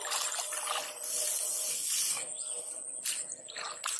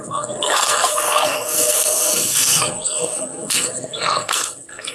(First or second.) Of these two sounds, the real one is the first